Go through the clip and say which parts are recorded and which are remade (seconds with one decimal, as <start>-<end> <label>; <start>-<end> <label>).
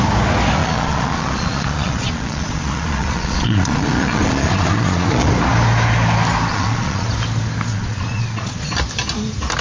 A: 0.0-0.6 recorded; 0.6-5.3 remade; 5.3-6.5 recorded; 6.5-7.1 remade; 7.1-7.7 recorded; 7.7-8.7 remade; 8.7-9.6 recorded